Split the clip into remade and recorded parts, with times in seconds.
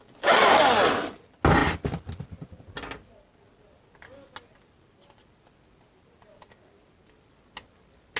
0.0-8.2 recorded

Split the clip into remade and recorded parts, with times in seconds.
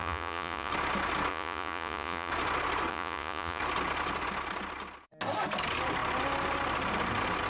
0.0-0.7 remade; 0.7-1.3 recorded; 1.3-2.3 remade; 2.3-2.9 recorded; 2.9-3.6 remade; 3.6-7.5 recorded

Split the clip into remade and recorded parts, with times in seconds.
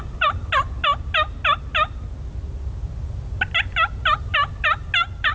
0.0-5.3 recorded